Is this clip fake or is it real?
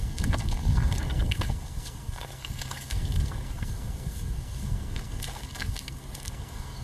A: fake